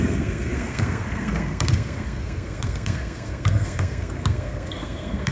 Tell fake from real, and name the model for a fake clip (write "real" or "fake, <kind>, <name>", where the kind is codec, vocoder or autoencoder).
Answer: fake, codec, SNAC